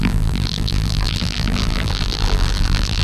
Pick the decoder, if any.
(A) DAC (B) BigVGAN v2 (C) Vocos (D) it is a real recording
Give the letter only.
B